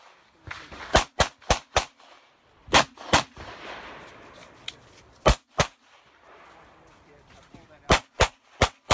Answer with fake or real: real